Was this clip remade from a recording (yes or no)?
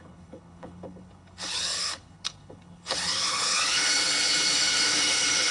yes